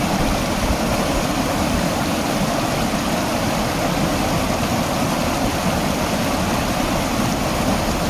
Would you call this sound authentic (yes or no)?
no